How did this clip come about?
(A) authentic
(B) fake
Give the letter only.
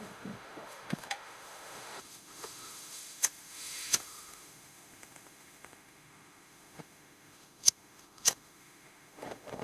B